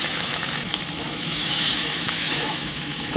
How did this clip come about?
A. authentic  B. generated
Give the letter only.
B